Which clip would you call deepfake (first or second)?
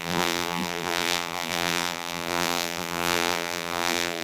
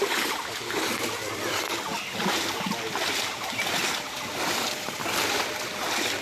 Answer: first